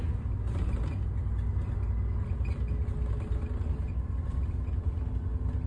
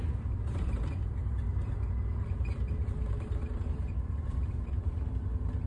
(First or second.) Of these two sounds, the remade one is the second